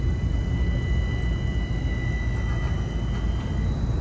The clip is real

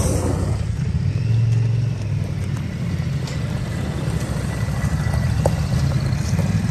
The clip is real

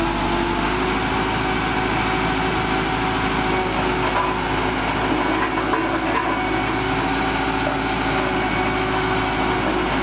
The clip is real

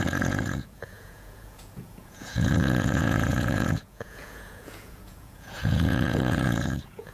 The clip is fake